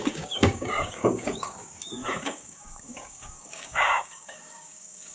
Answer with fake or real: fake